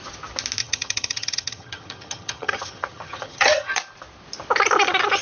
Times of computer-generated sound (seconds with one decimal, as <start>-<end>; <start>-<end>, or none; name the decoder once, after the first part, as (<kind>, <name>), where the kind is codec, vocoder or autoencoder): 0.6-3.7 (vocoder, HiFi-GAN)